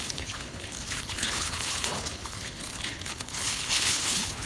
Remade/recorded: remade